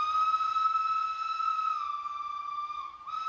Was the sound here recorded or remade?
recorded